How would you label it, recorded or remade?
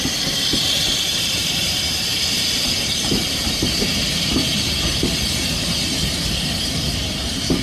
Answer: remade